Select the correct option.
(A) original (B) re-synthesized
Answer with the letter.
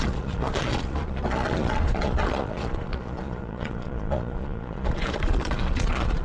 B